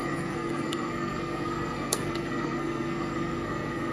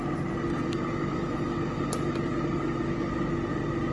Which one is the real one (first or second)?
second